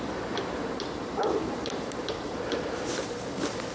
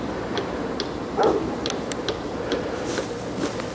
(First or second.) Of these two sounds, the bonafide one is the second